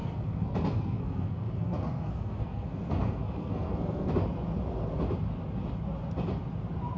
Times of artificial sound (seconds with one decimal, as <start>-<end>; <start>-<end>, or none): 0.0-4.1